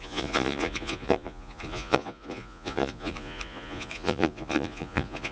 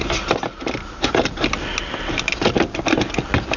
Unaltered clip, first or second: second